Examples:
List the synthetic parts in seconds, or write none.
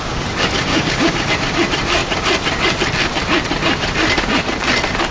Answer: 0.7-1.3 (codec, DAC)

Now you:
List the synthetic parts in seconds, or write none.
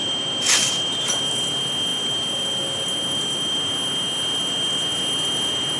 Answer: none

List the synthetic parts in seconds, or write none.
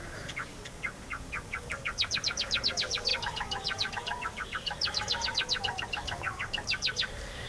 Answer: 0.0-7.5 (codec, DAC)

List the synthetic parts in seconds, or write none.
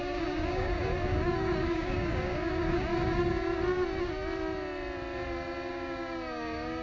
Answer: 0.0-2.9 (codec, DAC); 5.7-6.8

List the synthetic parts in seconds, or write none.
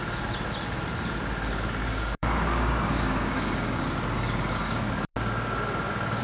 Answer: 1.8-3.8 (codec, DAC)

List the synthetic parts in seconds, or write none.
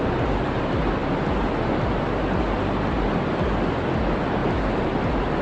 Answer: none